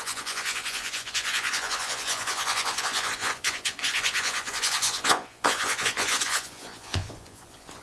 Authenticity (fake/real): fake